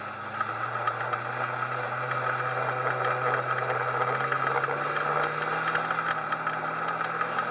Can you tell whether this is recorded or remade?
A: recorded